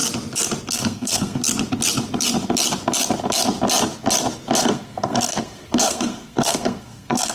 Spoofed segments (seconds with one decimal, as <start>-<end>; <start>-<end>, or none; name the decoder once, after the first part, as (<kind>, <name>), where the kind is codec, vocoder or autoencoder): 0.7-1.4 (codec, SNAC); 4.6-7.3